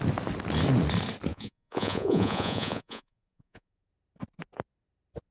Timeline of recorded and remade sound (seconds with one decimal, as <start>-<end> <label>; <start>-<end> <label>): 0.0-1.3 recorded; 1.3-3.9 remade; 3.9-5.3 recorded